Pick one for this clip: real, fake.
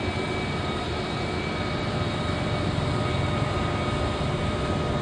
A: real